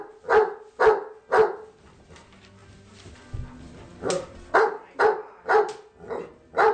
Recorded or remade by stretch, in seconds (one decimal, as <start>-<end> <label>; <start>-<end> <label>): 0.0-6.7 recorded